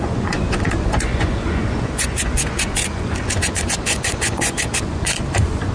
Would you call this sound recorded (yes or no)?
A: no